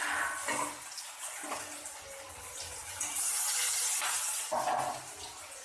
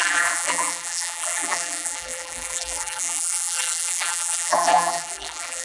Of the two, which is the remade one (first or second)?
second